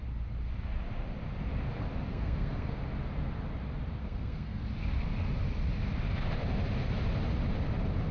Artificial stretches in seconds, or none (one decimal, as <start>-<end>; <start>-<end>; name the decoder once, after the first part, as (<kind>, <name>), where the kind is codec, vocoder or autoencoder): 2.1-2.7 (codec, SNAC); 4.0-4.6